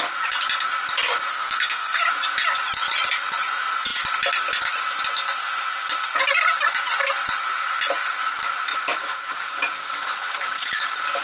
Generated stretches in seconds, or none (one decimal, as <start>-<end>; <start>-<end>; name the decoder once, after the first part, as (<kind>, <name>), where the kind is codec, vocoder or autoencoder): 1.3-2.0 (codec, SNAC)